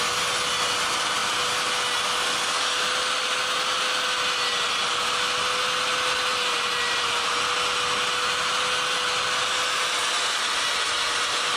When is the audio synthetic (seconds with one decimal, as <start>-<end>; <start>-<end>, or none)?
6.3-7.3